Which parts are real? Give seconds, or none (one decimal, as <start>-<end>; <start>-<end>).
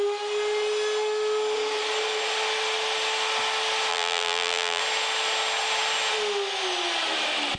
0.0-3.9; 4.8-7.6